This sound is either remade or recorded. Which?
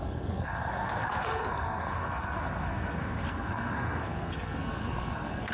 remade